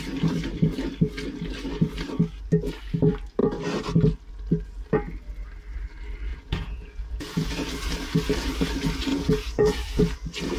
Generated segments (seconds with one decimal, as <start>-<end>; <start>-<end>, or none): 6.3-7.5; 9.1-10.0